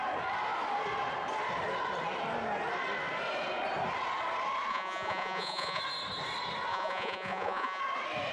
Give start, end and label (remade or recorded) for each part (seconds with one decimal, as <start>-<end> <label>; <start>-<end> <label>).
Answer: 0.0-4.7 recorded; 4.7-5.8 remade; 5.8-6.7 recorded; 6.7-7.8 remade; 7.8-8.3 recorded